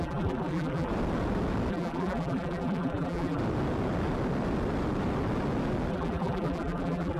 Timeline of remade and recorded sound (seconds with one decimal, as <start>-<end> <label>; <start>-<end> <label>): 0.0-0.9 remade; 0.9-1.7 recorded; 1.7-3.4 remade; 3.4-5.9 recorded; 5.9-7.2 remade